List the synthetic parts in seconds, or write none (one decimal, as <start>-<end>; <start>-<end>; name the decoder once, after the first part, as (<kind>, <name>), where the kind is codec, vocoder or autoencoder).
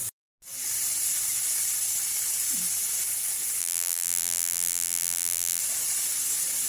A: 3.6-5.6 (vocoder, BigVGAN v2)